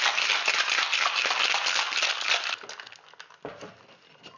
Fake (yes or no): no